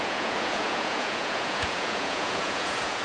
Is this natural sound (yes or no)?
no